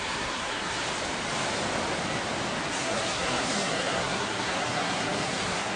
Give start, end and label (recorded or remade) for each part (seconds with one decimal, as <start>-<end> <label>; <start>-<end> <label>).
0.0-0.8 remade; 0.8-2.7 recorded; 2.7-5.8 remade